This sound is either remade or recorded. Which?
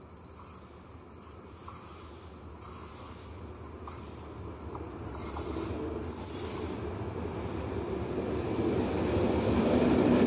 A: recorded